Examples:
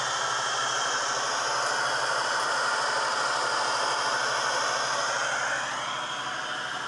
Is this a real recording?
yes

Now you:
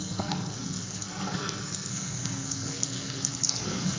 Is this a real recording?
no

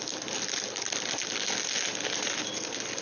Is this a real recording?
yes